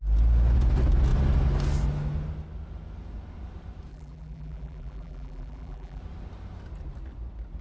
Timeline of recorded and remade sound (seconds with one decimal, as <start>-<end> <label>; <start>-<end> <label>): 0.0-3.9 recorded; 3.9-6.0 remade; 6.0-7.6 recorded